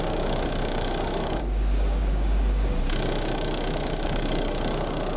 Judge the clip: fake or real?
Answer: fake